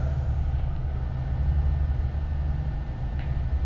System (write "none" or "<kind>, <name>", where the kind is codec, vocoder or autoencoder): none